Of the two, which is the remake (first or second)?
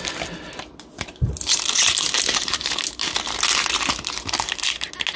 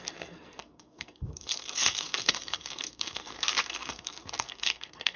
second